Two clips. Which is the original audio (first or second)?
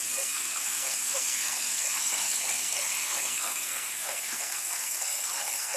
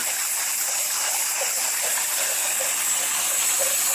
second